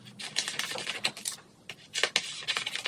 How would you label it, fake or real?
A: real